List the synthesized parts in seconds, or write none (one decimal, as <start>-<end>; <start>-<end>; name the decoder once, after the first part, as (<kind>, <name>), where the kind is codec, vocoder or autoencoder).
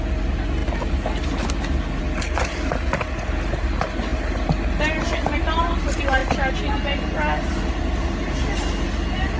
none